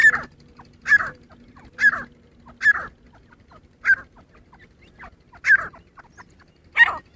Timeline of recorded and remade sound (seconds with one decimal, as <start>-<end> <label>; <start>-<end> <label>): 0.0-7.2 recorded